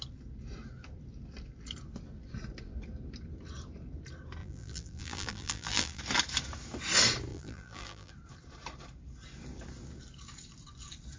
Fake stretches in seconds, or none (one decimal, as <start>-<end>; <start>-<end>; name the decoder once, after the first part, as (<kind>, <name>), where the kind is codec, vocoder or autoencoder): 4.4-6.0 (vocoder, BigVGAN v2); 7.3-8.1